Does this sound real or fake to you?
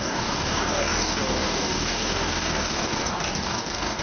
fake